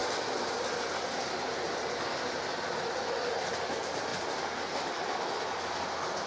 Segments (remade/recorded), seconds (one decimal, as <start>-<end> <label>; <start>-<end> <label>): 0.0-6.3 recorded